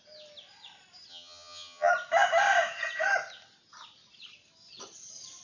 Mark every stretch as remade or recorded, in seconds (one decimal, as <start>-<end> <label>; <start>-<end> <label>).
0.0-1.1 recorded; 1.1-1.9 remade; 1.9-5.4 recorded